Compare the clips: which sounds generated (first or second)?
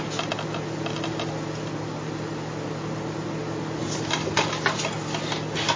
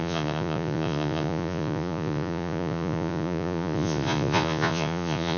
second